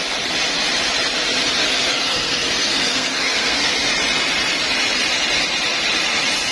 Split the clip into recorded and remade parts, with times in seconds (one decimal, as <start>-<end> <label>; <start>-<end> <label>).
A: 0.0-1.6 recorded; 1.6-3.7 remade; 3.7-6.5 recorded